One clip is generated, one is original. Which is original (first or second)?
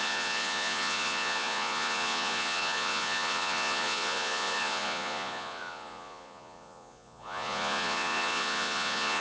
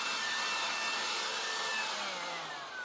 second